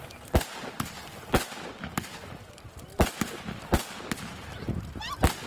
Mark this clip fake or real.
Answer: real